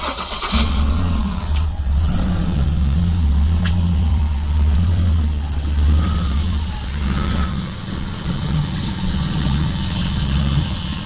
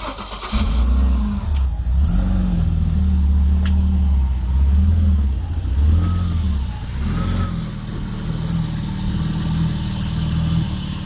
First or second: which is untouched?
second